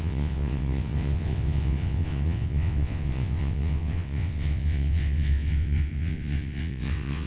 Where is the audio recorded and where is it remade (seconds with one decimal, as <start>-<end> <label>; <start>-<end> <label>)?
0.0-7.3 remade